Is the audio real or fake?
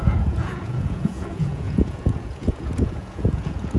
fake